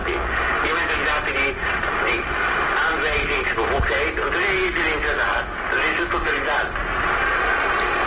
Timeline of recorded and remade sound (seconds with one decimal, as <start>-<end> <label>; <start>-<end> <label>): 0.0-8.1 recorded